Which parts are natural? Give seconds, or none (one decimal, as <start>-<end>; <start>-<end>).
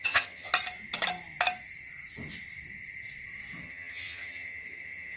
0.5-3.6